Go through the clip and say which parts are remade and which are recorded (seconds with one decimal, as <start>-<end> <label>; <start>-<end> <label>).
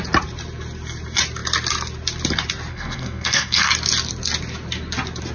0.0-2.7 recorded; 2.7-3.7 remade; 3.7-5.3 recorded